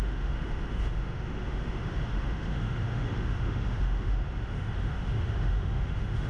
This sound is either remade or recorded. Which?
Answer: remade